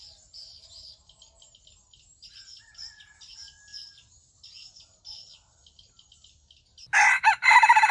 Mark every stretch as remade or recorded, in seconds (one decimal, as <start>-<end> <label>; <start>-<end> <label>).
0.0-7.9 recorded